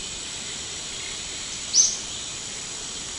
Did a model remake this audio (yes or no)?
no